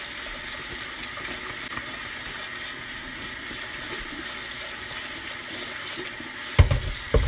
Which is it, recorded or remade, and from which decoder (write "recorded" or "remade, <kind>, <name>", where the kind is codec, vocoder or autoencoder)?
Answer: recorded